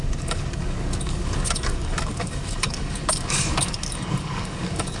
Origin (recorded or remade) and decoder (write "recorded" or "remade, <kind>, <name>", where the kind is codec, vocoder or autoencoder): remade, codec, DAC